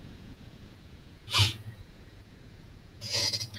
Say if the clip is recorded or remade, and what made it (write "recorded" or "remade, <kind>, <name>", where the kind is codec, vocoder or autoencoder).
remade, vocoder, Vocos